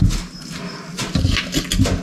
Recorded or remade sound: recorded